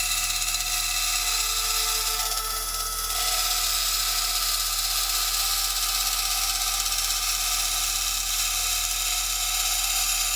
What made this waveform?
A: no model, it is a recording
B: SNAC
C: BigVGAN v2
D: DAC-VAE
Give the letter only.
A